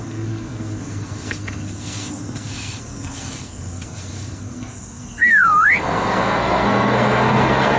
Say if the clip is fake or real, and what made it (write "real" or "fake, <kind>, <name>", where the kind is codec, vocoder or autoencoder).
fake, codec, SNAC